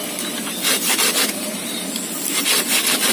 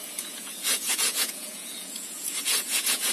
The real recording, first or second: first